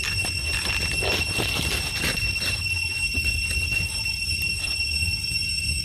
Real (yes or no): yes